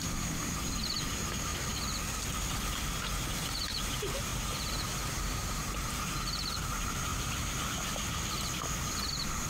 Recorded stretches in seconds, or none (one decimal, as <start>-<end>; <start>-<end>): 1.5-3.9; 7.1-9.1